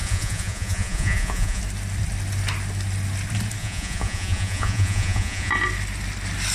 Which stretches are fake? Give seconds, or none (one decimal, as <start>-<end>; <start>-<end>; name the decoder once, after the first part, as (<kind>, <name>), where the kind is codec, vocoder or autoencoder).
0.0-1.6 (vocoder, Vocos); 3.6-5.5